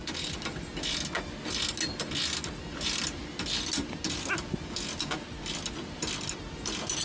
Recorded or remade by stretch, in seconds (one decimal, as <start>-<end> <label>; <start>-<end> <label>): 0.0-7.0 recorded